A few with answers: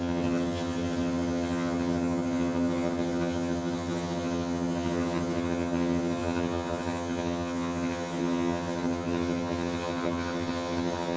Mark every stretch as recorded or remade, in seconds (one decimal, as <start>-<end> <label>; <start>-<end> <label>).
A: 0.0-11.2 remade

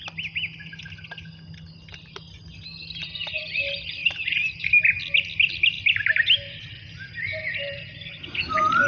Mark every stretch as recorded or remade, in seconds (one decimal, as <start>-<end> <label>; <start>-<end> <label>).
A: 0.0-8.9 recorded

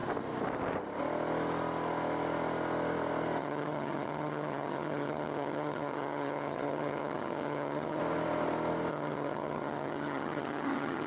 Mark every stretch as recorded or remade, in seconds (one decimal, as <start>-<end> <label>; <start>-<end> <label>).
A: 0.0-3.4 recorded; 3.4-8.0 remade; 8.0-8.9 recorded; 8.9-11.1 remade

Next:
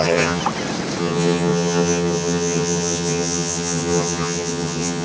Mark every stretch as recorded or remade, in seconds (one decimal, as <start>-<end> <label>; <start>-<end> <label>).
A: 0.0-0.4 remade; 0.4-1.0 recorded; 1.0-5.0 remade

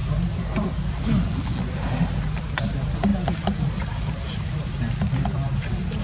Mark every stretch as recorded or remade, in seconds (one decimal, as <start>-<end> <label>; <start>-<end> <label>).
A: 0.0-6.0 recorded